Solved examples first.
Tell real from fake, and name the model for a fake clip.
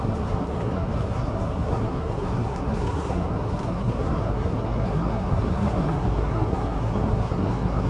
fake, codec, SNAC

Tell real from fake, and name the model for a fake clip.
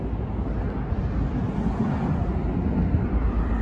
real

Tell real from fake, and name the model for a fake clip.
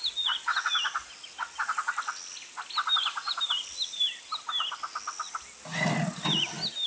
real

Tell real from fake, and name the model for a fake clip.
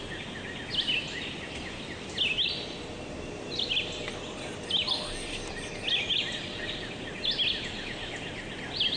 real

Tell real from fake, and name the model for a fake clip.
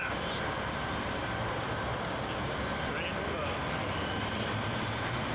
real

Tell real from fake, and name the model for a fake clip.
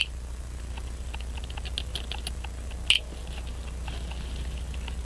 real